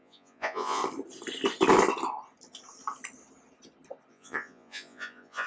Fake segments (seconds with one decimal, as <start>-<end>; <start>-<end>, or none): 0.0-0.8; 4.1-5.5